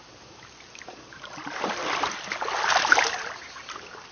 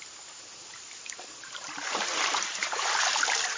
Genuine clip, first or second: first